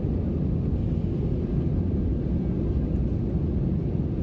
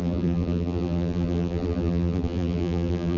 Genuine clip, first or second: first